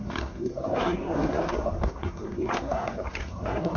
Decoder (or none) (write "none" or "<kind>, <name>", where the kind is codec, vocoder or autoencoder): codec, SNAC